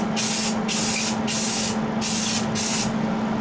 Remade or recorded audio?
recorded